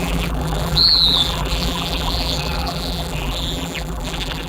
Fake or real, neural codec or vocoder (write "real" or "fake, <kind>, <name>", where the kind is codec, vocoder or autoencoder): fake, vocoder, BigVGAN v2